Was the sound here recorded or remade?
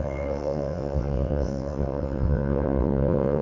remade